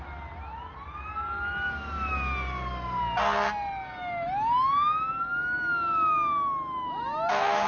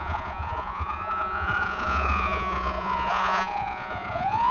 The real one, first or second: first